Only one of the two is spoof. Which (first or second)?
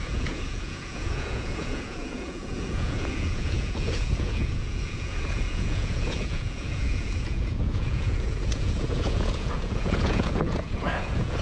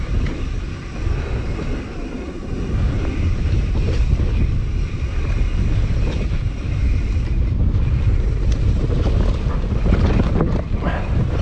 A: first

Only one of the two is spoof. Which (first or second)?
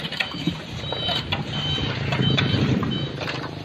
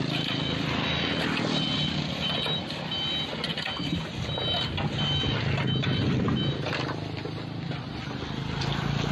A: first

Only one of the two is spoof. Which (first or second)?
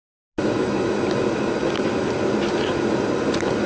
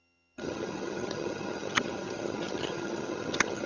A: second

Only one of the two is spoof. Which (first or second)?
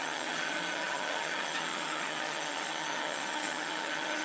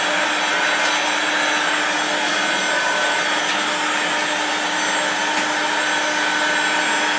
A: first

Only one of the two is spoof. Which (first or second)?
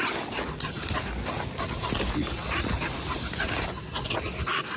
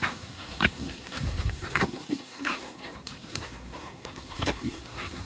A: second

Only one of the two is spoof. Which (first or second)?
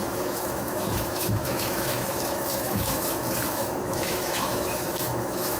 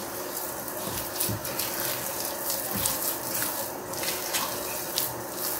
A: first